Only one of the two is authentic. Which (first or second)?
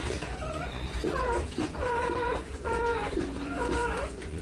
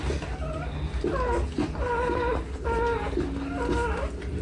second